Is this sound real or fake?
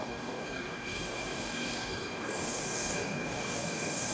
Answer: fake